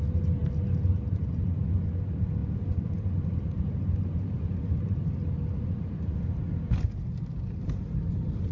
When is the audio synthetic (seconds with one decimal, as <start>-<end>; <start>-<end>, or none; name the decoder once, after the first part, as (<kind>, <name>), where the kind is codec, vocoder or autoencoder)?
none